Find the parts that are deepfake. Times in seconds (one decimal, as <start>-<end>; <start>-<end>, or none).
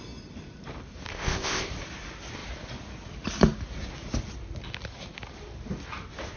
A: 1.1-1.7